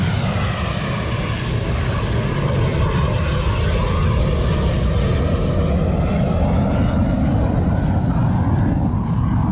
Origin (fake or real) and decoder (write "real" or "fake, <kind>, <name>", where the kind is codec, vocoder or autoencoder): real